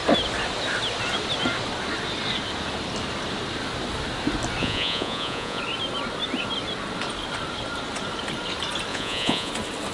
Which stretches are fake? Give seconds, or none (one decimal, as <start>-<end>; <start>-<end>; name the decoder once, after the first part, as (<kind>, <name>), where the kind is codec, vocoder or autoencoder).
4.6-5.6 (vocoder, Vocos); 8.9-9.5